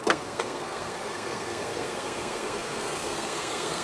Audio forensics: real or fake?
fake